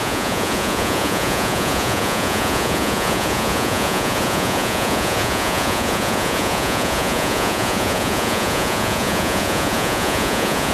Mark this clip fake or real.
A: fake